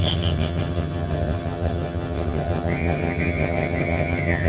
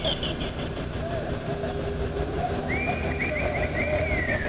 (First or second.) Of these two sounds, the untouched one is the second